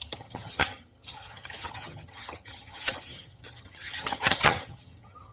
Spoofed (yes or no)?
yes